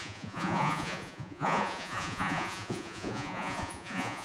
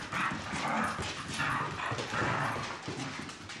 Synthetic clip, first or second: first